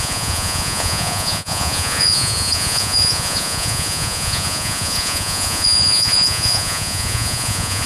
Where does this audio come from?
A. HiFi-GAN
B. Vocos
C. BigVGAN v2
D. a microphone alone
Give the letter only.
B